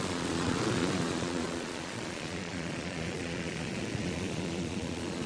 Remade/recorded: remade